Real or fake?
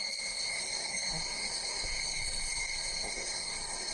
fake